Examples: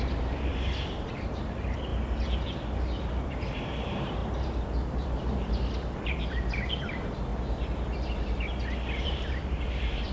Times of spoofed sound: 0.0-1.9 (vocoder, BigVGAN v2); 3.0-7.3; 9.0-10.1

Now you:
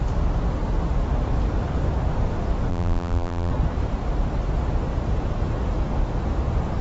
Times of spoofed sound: 2.7-3.5 (vocoder, BigVGAN v2)

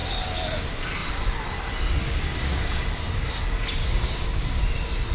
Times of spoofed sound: 2.0-3.4 (codec, DAC); 3.8-4.6

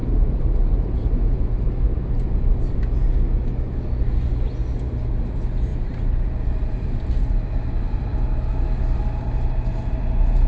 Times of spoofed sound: 0.0-2.8 (vocoder, BigVGAN v2); 5.7-8.0

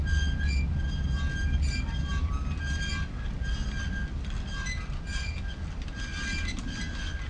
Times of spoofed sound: none

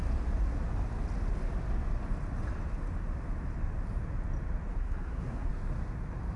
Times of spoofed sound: 4.7-5.5 (codec, SNAC)